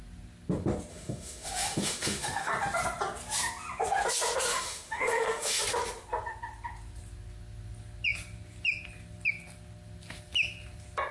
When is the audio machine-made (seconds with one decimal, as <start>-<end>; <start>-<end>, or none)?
0.9-2.5; 4.5-5.6